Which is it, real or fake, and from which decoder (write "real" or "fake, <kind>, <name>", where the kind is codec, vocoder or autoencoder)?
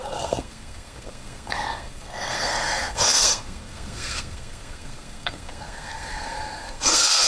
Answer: fake, codec, SNAC